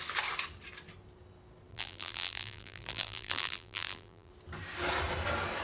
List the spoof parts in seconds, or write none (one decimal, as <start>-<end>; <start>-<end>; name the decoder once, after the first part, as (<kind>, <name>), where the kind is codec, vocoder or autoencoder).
1.7-4.3 (vocoder, BigVGAN v2)